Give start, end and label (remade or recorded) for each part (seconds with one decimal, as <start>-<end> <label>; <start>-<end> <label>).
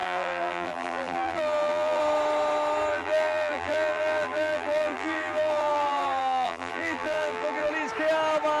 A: 0.0-2.0 remade; 2.0-2.9 recorded; 2.9-7.7 remade; 7.7-8.6 recorded